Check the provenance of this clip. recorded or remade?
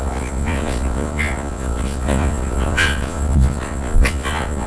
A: remade